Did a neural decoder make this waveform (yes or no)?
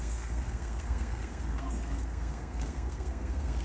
yes